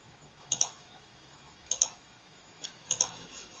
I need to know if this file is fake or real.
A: fake